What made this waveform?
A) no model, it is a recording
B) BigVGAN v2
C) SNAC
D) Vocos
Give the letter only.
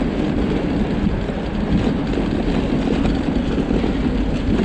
A